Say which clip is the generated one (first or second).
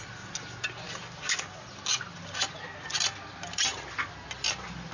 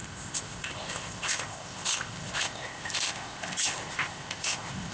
second